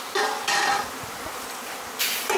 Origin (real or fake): fake